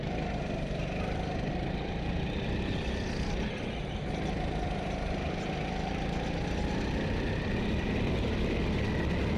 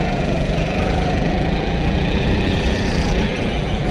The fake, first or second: second